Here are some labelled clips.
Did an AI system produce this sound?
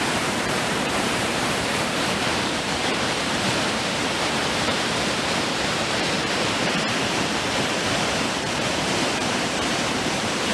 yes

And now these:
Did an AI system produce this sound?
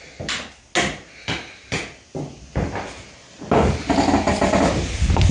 no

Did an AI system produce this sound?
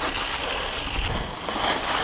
no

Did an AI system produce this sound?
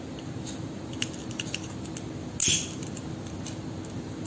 no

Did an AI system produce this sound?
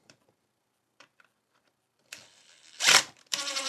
yes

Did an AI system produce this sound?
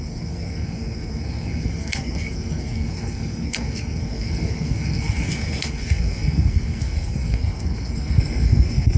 yes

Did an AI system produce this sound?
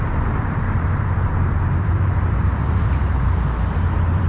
yes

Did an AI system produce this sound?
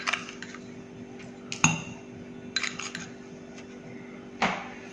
no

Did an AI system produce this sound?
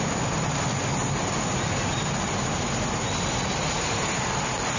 no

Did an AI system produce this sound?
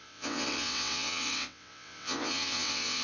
yes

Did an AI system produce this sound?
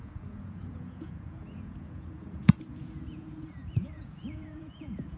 yes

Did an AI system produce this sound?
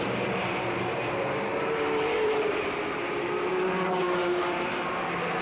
yes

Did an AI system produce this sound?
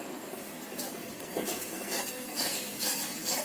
yes